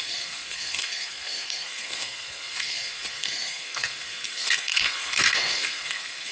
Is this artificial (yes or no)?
yes